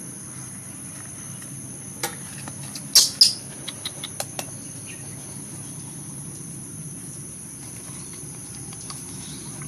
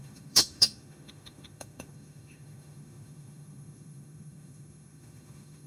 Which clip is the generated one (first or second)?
second